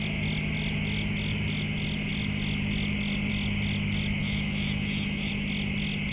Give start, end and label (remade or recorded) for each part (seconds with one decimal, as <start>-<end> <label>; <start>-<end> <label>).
0.0-4.2 recorded; 4.2-5.3 remade; 5.3-6.1 recorded